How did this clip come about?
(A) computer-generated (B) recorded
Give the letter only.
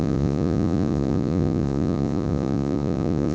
A